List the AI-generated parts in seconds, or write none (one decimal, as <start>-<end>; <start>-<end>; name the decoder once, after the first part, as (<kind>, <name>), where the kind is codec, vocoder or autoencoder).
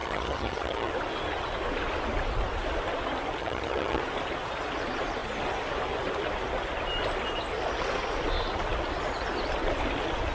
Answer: 0.0-0.9 (vocoder, HiFi-GAN); 3.4-4.0